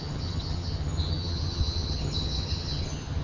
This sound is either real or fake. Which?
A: fake